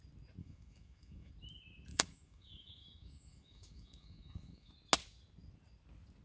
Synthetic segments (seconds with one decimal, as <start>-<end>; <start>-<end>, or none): 0.4-1.3; 1.9-4.7